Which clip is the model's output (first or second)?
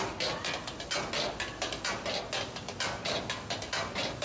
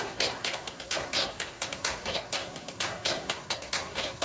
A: second